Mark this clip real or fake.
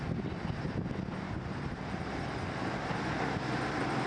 real